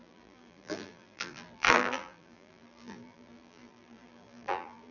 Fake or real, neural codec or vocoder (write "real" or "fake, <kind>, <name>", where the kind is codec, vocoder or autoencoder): fake, vocoder, BigVGAN v2